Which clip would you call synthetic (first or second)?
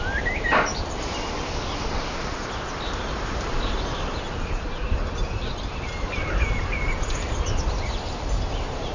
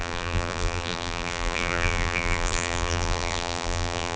second